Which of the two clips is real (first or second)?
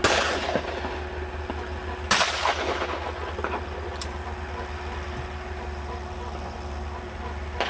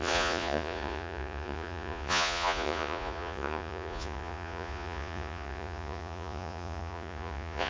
first